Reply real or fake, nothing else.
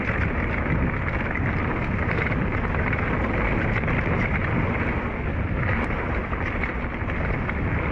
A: real